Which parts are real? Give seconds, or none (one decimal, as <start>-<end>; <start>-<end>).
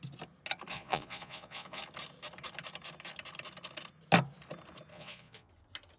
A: 0.0-0.7; 1.8-4.9; 5.5-6.0